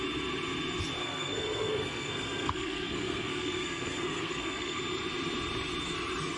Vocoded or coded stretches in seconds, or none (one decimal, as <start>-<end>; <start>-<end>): 1.0-4.8